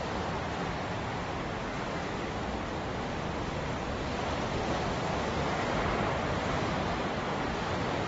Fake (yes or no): no